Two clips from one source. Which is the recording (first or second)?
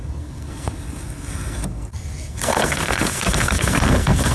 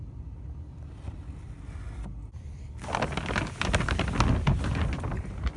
second